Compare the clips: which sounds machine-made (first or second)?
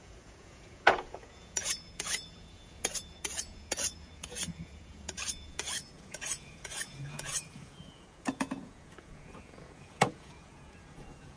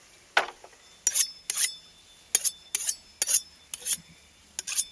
first